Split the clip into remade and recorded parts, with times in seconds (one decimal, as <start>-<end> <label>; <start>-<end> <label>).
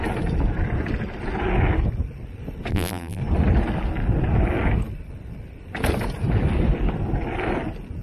0.0-2.7 recorded; 2.7-3.2 remade; 3.2-8.0 recorded